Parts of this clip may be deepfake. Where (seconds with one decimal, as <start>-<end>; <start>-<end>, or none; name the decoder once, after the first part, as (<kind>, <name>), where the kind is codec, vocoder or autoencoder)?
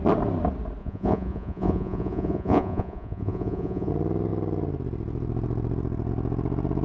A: 0.8-3.9 (vocoder, Vocos)